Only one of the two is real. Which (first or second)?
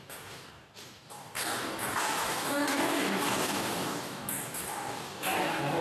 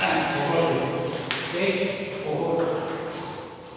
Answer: second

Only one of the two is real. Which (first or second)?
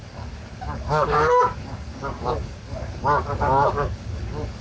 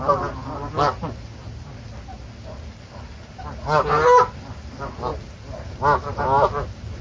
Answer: second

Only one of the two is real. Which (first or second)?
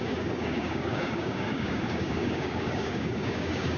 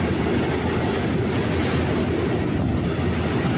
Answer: second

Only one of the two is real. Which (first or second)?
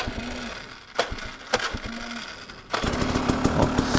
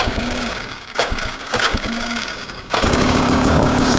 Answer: first